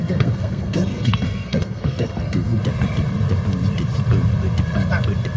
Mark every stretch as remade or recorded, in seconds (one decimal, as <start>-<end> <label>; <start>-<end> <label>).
0.0-2.6 remade; 2.6-5.4 recorded